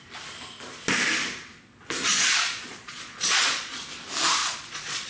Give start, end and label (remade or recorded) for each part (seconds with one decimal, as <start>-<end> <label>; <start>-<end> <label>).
0.0-2.1 recorded; 2.1-3.8 remade; 3.8-4.4 recorded; 4.4-5.1 remade